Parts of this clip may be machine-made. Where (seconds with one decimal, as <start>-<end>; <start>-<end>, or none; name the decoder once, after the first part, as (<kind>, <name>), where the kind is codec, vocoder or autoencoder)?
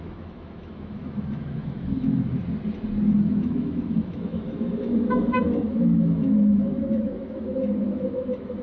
0.0-2.4 (autoencoder, DAC-VAE); 3.2-8.6